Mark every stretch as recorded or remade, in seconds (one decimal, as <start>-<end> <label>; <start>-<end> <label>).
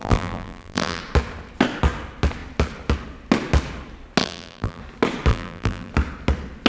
0.0-1.0 remade; 1.0-4.2 recorded; 4.2-4.8 remade; 4.8-5.3 recorded; 5.3-5.9 remade; 5.9-6.7 recorded